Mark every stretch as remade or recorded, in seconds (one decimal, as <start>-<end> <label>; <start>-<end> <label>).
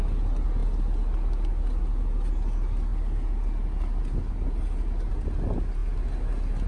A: 0.0-6.7 recorded